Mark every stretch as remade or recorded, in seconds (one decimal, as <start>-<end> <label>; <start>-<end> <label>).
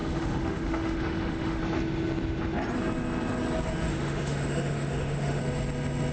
0.0-1.6 remade; 1.6-3.9 recorded; 3.9-5.4 remade; 5.4-6.1 recorded